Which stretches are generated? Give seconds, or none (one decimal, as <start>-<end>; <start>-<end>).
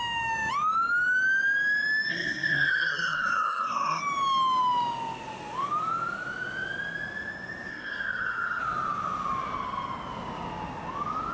2.1-4.0; 7.7-8.6